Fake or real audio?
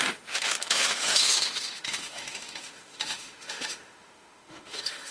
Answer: fake